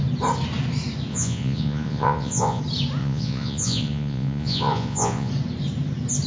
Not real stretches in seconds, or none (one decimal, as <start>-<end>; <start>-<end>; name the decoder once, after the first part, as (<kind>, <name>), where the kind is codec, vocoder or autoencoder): 1.1-2.6 (vocoder, Vocos); 3.0-5.3